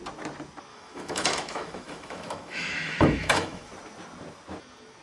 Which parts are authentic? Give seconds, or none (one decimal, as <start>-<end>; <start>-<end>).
0.0-0.7; 3.7-5.0